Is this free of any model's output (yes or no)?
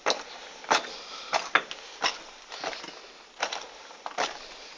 yes